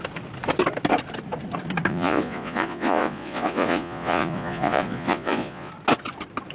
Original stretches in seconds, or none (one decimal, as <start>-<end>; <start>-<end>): 0.0-1.9; 5.7-6.5